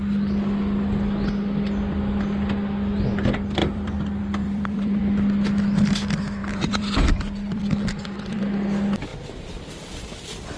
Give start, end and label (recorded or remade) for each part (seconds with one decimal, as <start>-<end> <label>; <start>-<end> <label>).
0.0-3.6 recorded; 3.6-5.0 remade; 5.0-6.4 recorded; 6.4-8.4 remade; 8.4-9.1 recorded; 9.1-9.7 remade; 9.7-10.6 recorded